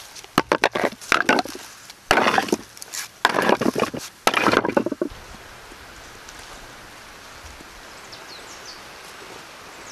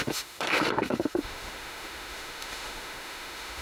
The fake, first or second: second